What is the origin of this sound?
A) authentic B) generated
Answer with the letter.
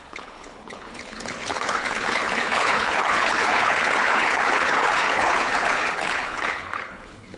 B